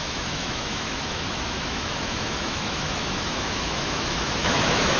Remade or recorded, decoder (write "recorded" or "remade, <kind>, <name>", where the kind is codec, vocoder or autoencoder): remade, autoencoder, DAC-VAE